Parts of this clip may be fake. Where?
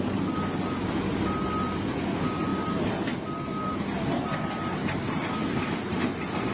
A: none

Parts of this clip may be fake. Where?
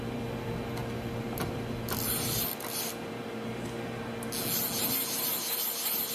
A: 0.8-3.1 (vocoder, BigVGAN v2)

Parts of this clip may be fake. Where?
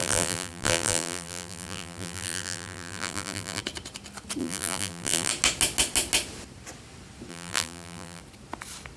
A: 0.0-3.6 (vocoder, BigVGAN v2); 4.4-5.3; 7.3-8.2